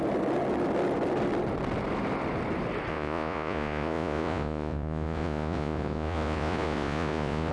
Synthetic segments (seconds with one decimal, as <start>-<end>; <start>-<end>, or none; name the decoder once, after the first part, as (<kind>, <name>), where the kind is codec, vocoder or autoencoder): 2.9-7.5 (vocoder, Vocos)